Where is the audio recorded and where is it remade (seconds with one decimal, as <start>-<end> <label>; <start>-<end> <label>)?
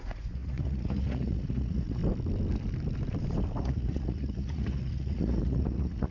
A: 0.0-2.0 remade; 2.0-3.6 recorded; 3.6-6.1 remade